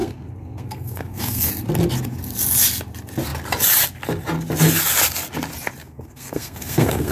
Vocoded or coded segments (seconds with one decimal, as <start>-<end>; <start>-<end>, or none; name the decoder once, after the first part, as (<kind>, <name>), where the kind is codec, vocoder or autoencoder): 0.0-1.5 (codec, SNAC); 5.8-7.1